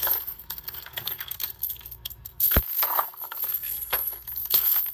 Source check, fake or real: fake